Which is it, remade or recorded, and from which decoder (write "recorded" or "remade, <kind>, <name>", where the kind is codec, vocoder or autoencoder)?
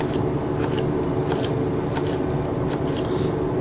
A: recorded